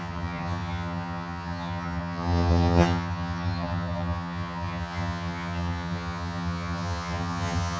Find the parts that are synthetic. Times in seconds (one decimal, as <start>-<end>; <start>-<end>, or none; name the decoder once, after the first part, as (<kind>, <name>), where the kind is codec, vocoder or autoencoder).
0.0-7.8 (vocoder, HiFi-GAN)